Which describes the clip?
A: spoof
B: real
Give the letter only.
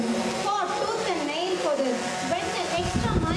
B